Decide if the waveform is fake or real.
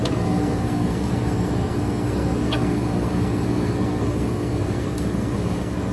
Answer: fake